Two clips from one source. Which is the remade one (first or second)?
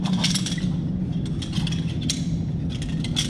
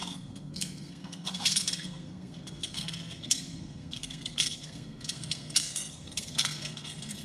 second